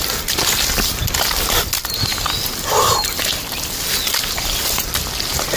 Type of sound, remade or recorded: recorded